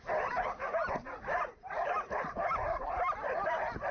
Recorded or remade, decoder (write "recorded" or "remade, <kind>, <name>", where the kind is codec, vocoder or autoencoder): recorded